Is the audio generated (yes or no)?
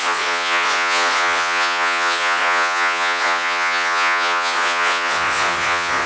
yes